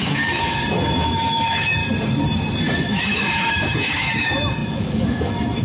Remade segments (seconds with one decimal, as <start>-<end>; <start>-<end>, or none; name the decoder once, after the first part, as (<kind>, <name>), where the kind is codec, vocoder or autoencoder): 0.0-1.8 (autoencoder, DAC-VAE); 2.8-5.6